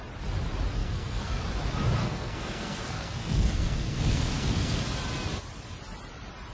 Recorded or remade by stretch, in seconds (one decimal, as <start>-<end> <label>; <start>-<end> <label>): 0.0-0.8 recorded; 0.8-1.4 remade; 1.4-2.0 recorded; 2.0-4.8 remade; 4.8-6.5 recorded